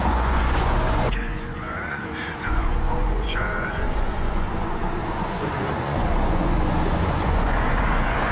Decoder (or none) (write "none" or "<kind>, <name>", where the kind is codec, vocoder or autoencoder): vocoder, Vocos